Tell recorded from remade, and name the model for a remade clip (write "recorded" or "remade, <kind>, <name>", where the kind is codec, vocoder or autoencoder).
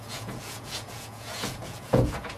remade, vocoder, Vocos